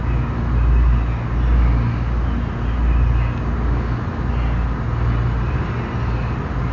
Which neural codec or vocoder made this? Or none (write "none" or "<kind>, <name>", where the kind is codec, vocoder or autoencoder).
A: none